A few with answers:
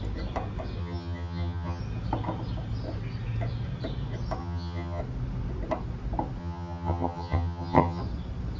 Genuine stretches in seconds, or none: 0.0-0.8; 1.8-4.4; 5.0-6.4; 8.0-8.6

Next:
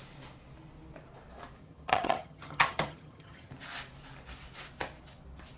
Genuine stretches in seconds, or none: 0.0-1.6; 3.5-5.6

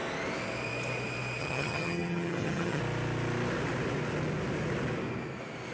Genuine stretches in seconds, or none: 0.0-1.4; 2.8-5.7

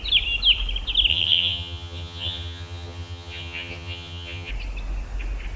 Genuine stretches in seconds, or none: 0.0-1.1; 4.5-5.6

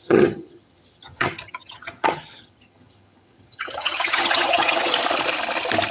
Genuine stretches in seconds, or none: 4.9-5.9

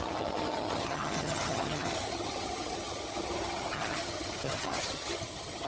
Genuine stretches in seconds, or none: none